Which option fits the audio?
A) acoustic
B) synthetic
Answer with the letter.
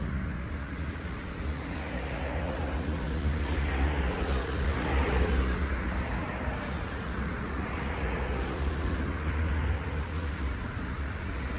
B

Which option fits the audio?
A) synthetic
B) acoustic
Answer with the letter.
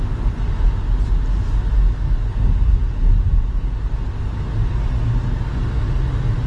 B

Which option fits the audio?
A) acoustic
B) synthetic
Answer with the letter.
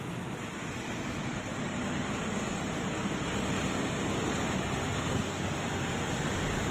A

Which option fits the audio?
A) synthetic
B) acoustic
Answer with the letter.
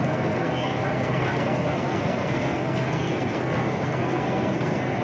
A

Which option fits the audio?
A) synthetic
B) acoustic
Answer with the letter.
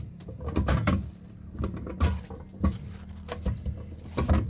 B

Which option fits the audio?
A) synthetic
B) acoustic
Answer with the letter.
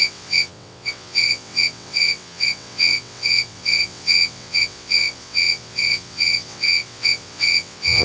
A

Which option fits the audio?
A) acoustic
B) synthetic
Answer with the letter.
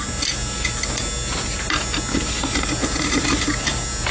A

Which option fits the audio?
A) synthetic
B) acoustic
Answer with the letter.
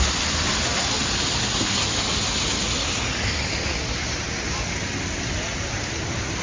B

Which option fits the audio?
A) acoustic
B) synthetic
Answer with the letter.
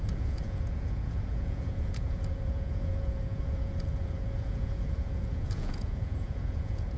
B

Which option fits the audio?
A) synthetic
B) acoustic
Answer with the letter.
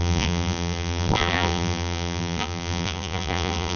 A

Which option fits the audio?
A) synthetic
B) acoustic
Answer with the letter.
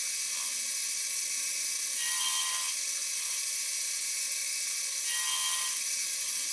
A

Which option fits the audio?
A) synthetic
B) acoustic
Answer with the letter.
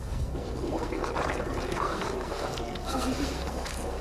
A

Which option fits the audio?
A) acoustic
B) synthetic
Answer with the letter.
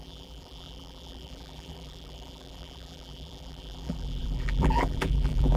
B